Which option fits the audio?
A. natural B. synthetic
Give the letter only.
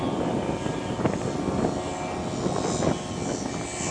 A